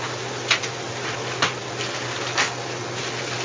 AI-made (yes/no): no